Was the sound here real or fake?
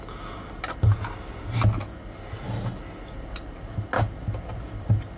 real